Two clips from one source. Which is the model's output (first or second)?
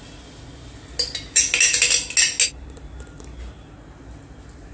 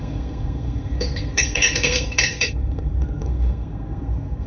second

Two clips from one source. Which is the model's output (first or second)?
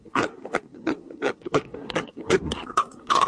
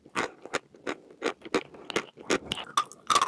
first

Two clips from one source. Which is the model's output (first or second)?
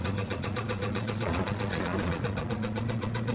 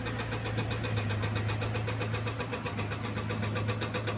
first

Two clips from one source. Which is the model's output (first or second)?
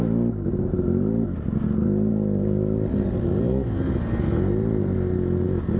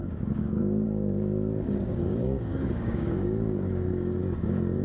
second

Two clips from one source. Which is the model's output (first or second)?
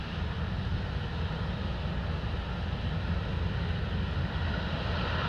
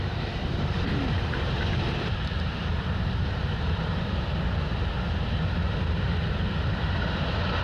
second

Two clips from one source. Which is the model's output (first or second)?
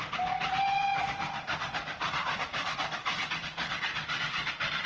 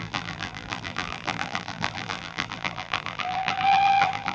second